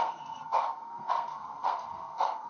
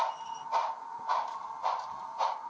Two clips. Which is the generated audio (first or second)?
first